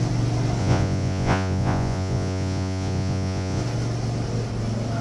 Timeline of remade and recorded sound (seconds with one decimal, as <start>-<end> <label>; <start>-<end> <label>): 0.0-0.6 recorded; 0.6-3.6 remade; 3.6-5.0 recorded